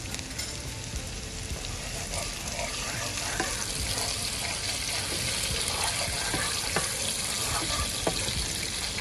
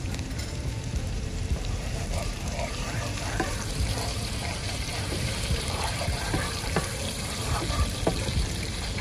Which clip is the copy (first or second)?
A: second